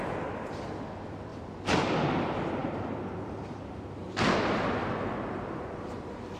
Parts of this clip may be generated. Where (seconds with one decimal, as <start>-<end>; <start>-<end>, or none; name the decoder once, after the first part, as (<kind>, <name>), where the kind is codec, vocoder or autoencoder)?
0.0-4.0 (vocoder, BigVGAN v2); 5.4-6.4